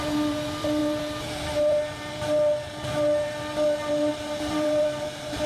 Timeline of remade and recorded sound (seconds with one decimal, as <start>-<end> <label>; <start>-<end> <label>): 0.0-5.5 remade